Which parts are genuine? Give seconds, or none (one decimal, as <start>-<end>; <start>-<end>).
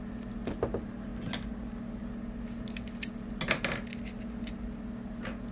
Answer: 0.0-5.5